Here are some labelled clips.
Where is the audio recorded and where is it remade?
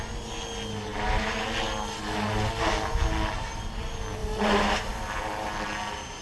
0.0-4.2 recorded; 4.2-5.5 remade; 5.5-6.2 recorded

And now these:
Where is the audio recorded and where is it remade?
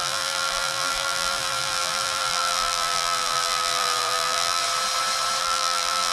0.0-4.6 remade; 4.6-5.4 recorded; 5.4-6.1 remade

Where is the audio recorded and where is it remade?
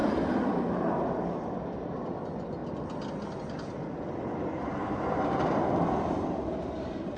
0.0-7.2 recorded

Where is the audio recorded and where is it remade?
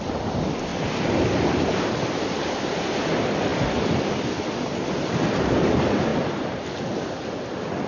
0.0-0.7 recorded; 0.7-2.9 remade; 2.9-3.5 recorded; 3.5-4.4 remade; 4.4-6.1 recorded; 6.1-6.8 remade; 6.8-7.9 recorded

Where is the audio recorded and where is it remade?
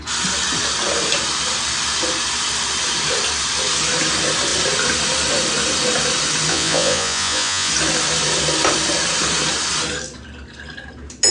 0.0-6.5 recorded; 6.5-7.7 remade; 7.7-11.3 recorded